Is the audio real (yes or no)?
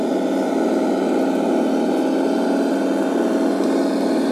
yes